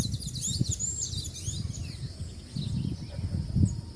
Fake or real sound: real